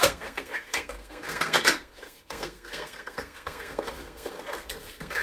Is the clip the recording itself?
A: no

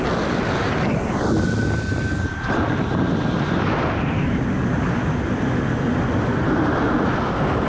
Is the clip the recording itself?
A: yes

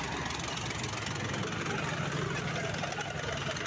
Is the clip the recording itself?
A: yes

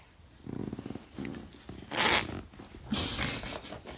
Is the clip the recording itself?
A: yes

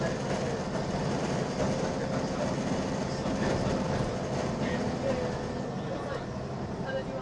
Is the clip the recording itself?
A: yes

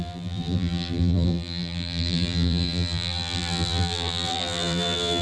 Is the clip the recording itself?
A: no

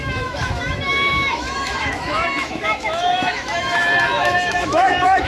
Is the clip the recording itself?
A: no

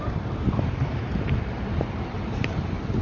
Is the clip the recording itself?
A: no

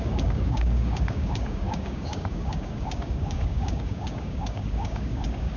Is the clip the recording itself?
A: no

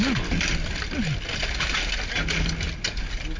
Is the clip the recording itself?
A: yes